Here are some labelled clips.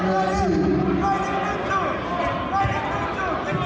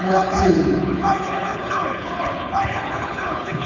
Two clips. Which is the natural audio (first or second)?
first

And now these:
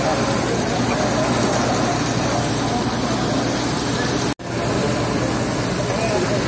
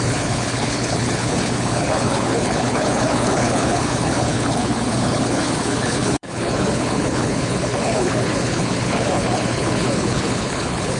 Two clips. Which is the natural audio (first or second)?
first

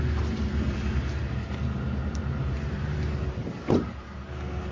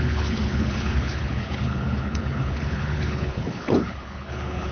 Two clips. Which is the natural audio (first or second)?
first